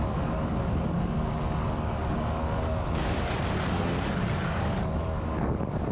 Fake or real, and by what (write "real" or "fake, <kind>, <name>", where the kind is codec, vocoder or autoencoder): fake, codec, DAC